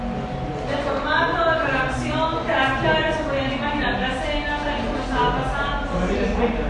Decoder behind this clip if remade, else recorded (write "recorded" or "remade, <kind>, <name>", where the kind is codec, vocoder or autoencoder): recorded